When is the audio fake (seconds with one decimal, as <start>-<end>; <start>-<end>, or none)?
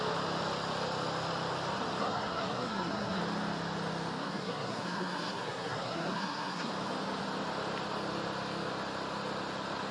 2.0-3.2; 4.2-6.7